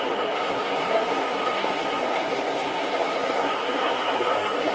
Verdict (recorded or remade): remade